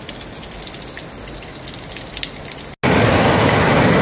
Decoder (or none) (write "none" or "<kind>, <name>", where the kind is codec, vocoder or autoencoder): none